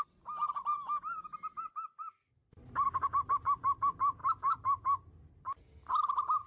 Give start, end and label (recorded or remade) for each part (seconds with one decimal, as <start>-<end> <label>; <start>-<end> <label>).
0.0-6.5 recorded